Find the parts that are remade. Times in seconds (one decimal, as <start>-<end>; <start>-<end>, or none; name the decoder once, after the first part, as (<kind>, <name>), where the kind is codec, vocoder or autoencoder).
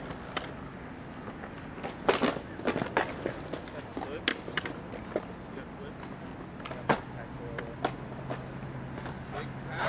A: none